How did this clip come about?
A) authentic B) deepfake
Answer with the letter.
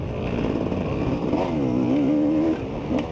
A